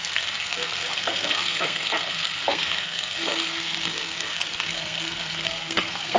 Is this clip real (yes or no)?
no